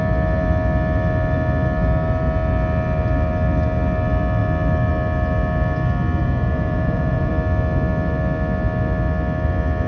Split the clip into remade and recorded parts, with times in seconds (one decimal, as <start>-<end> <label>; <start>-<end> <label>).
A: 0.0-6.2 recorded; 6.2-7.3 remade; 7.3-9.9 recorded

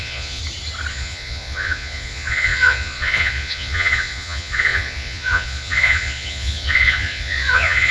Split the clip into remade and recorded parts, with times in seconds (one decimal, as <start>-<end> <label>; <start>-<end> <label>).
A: 0.0-0.4 remade; 0.4-0.9 recorded; 0.9-7.9 remade

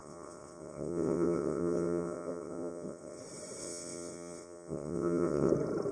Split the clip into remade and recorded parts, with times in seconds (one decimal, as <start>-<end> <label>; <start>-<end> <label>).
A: 0.0-3.2 remade; 3.2-3.6 recorded; 3.6-5.5 remade; 5.5-5.9 recorded

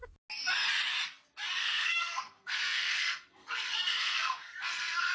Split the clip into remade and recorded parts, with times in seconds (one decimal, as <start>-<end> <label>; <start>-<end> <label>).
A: 0.0-1.6 recorded; 1.6-5.1 remade

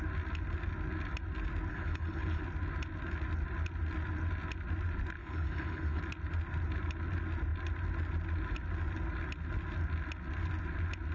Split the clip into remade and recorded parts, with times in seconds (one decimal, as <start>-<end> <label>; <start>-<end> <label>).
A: 0.0-1.7 recorded; 1.7-2.4 remade; 2.4-5.2 recorded; 5.2-6.0 remade; 6.0-11.1 recorded